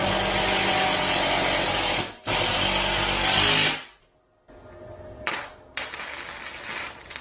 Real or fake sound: real